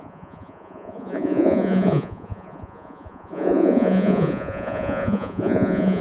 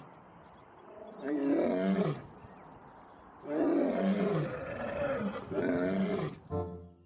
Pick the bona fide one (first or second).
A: second